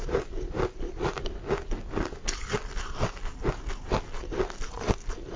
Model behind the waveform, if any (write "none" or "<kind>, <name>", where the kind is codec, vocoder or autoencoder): none